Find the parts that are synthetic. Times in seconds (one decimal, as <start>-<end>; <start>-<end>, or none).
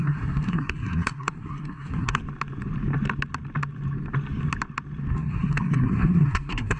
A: 0.0-2.2; 5.1-6.8